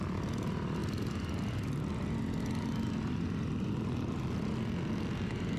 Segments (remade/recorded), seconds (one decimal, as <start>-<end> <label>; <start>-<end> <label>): 0.0-5.6 recorded